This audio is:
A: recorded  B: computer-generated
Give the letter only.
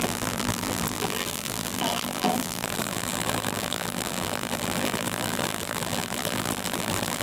B